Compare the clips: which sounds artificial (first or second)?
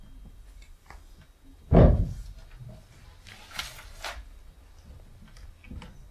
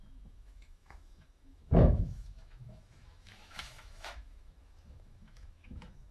second